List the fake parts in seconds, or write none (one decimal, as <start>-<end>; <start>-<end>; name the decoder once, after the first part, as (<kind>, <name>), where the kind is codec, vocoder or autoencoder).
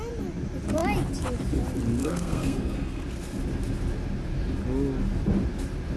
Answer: 2.0-3.0 (codec, SNAC)